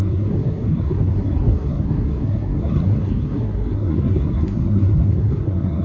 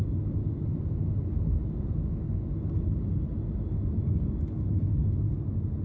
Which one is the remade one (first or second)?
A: first